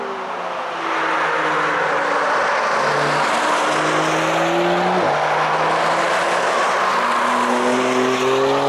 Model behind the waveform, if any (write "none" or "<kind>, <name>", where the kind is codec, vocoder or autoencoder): none